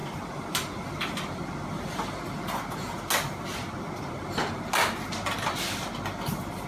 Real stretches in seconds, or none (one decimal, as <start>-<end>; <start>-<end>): 0.0-6.7